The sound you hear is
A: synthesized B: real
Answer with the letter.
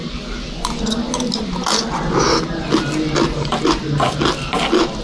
B